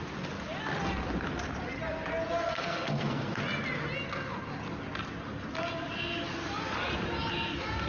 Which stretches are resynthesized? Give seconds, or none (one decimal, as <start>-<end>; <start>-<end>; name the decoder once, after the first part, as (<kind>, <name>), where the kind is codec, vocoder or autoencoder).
2.5-3.4 (codec, SNAC)

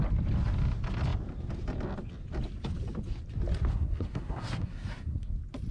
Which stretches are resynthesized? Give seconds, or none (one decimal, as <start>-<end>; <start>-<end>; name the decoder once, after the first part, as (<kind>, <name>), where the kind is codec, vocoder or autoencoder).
3.7-5.3 (codec, SNAC)

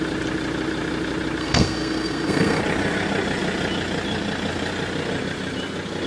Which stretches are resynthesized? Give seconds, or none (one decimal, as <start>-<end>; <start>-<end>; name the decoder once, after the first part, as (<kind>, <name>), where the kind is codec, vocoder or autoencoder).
1.4-2.6 (codec, SNAC)